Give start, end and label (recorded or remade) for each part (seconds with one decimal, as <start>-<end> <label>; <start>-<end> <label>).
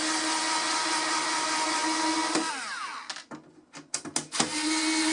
0.0-1.8 recorded; 1.8-2.5 remade; 2.5-5.1 recorded